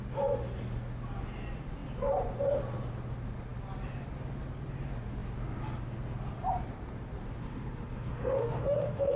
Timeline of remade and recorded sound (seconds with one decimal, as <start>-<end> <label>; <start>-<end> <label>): 0.0-7.4 recorded; 7.4-9.2 remade